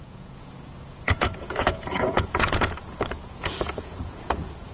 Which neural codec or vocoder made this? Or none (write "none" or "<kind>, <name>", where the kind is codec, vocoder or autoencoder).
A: vocoder, Vocos